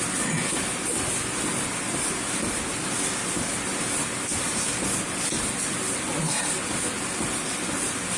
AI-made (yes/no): no